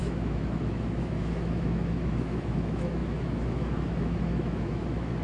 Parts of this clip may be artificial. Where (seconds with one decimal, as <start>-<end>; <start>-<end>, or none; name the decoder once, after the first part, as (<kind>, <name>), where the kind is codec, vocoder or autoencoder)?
0.0-5.2 (autoencoder, DAC-VAE)